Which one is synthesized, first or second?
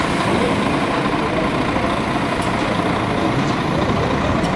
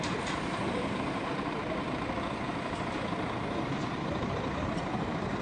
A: second